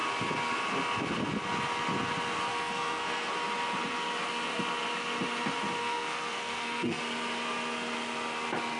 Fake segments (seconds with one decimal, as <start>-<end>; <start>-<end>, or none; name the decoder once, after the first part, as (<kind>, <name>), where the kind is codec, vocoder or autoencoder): 2.5-3.3 (codec, SNAC); 5.8-7.0